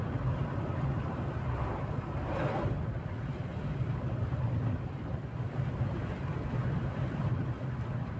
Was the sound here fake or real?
real